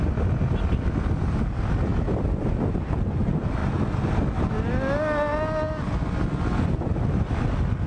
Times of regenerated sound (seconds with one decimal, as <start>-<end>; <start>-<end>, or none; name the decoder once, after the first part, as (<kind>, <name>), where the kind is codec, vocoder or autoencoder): none